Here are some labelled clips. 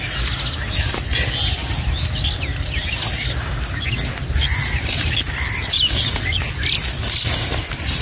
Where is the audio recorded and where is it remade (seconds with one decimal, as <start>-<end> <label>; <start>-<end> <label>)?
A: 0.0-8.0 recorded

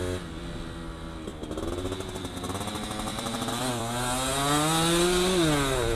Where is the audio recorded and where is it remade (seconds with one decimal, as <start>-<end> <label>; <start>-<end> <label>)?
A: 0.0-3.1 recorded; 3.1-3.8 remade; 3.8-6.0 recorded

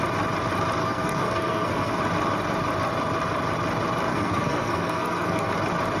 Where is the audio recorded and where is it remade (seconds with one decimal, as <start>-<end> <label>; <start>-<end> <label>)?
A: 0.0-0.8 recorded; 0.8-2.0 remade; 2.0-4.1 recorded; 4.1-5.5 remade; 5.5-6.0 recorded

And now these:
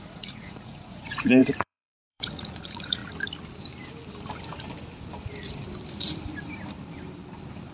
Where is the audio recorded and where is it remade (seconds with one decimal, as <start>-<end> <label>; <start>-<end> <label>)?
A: 0.0-3.0 remade; 3.0-7.7 recorded

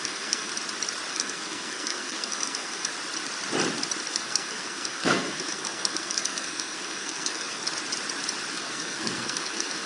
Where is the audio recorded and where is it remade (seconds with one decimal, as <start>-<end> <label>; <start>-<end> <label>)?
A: 0.0-0.5 remade; 0.5-1.1 recorded; 1.1-2.9 remade; 2.9-4.1 recorded; 4.1-7.6 remade; 7.6-8.5 recorded; 8.5-9.9 remade

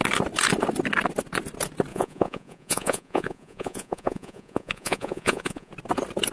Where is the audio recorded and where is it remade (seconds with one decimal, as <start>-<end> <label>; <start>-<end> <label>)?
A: 0.0-1.9 recorded; 1.9-5.7 remade; 5.7-6.3 recorded

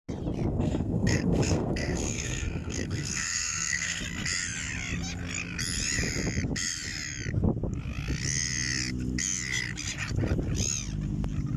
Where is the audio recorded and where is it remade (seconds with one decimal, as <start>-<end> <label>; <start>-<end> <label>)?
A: 0.0-0.5 recorded; 0.5-4.0 remade; 4.0-11.6 recorded

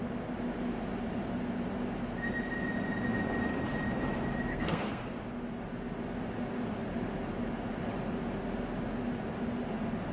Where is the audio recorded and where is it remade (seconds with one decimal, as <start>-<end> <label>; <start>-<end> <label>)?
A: 0.0-4.5 recorded; 4.5-5.0 remade; 5.0-10.1 recorded